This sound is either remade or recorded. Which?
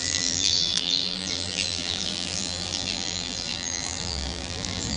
remade